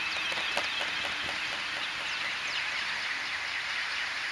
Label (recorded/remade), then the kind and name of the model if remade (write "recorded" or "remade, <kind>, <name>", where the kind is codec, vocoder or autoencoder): recorded